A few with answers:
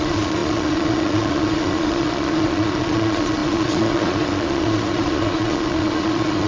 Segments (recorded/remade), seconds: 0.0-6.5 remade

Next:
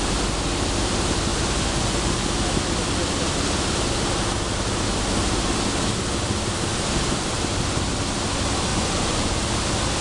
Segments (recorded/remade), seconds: 0.0-1.3 recorded; 1.3-2.3 remade; 2.3-8.7 recorded; 8.7-9.4 remade; 9.4-10.0 recorded

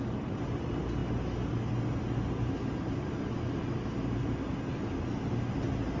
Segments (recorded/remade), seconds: 0.0-6.0 recorded

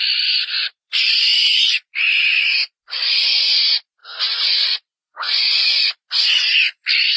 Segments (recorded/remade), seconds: 0.0-4.0 recorded; 4.0-5.3 remade; 5.3-7.2 recorded

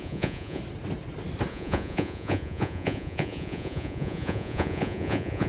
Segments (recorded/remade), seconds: 0.0-0.6 remade; 0.6-1.5 recorded; 1.5-5.5 remade